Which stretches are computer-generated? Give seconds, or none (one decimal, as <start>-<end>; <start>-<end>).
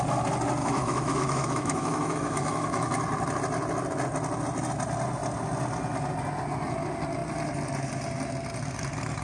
0.6-2.9